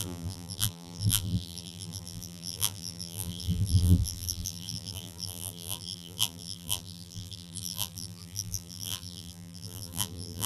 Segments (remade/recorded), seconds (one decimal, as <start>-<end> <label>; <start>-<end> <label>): 0.0-10.5 remade